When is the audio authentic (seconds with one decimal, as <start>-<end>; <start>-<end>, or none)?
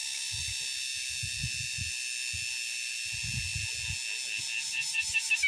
0.0-5.5